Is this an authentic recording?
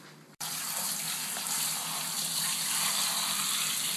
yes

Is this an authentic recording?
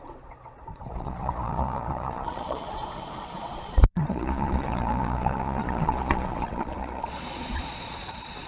no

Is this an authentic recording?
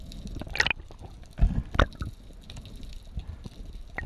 yes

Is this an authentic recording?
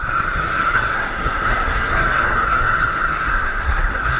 no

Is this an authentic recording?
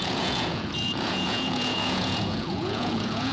no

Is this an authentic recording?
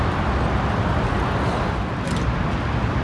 yes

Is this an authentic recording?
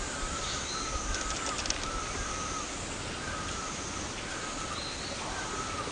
yes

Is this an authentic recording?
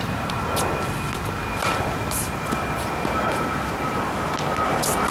yes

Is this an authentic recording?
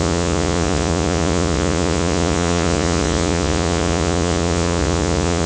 no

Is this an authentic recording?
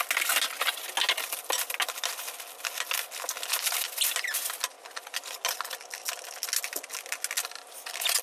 yes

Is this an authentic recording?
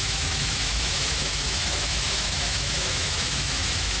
no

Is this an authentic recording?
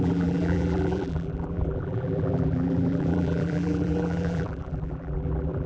no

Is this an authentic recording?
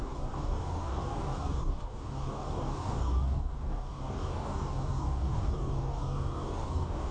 no